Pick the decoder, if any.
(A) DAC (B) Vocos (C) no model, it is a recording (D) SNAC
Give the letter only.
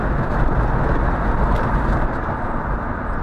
C